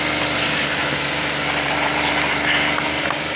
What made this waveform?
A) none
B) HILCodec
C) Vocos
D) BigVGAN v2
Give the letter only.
A